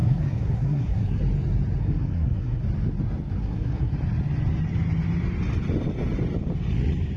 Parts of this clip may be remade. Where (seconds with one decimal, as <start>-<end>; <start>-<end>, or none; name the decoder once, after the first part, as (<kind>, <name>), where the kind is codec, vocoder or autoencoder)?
0.0-1.2 (codec, SNAC); 1.8-2.6; 3.4-3.9